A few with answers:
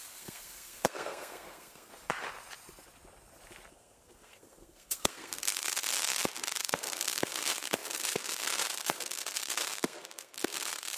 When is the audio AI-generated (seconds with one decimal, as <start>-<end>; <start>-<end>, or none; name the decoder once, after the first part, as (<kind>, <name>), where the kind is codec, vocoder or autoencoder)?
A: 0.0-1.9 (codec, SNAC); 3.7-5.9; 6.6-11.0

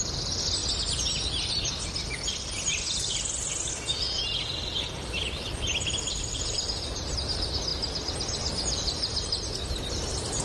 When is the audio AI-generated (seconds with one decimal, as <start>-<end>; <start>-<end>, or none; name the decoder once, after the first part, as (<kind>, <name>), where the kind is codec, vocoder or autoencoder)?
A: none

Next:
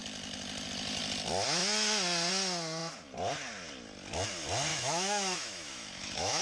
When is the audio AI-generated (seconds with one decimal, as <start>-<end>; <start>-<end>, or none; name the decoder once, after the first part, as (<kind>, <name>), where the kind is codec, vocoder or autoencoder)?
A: 4.7-6.4 (autoencoder, DAC-VAE)